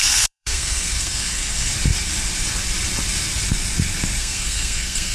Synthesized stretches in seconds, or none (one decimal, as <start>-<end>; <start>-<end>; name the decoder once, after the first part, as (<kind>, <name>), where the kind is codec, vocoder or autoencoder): 0.0-1.7 (codec, SNAC); 4.2-5.1